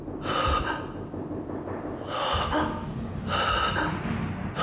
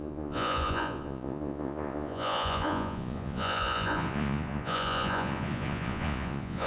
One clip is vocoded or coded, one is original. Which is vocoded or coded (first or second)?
second